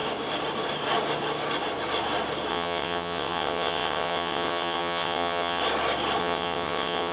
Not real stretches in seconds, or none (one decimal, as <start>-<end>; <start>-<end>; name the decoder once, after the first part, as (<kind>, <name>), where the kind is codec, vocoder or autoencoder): 2.5-5.6 (vocoder, WaveNeXt); 6.2-7.1